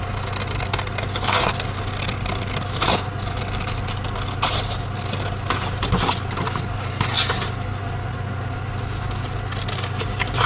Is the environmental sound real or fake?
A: real